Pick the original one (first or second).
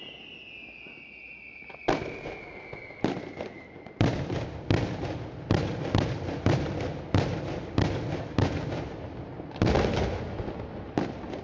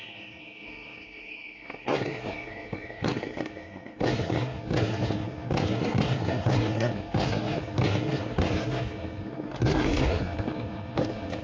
first